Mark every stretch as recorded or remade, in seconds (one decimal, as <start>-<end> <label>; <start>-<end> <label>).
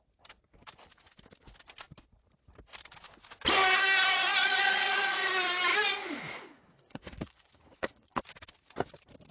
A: 0.0-4.3 recorded; 4.3-5.3 remade; 5.3-5.7 recorded; 5.7-8.2 remade; 8.2-9.3 recorded